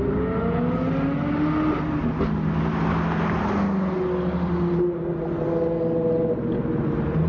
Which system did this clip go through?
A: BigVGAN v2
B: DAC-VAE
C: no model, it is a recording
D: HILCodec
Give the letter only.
C